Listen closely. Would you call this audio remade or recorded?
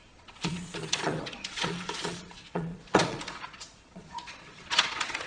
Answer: remade